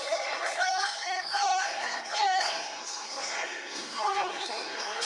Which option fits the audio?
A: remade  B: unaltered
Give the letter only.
A